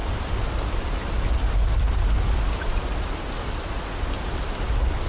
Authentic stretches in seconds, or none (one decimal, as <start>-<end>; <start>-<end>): 0.0-5.1